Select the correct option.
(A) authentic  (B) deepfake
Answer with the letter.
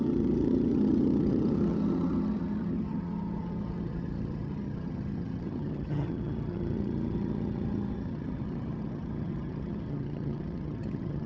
B